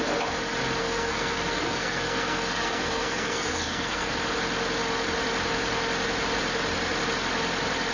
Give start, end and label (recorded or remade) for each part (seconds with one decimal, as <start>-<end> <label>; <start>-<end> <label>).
0.0-0.8 recorded; 0.8-4.1 remade; 4.1-7.9 recorded